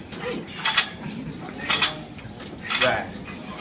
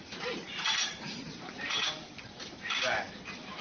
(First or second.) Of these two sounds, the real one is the first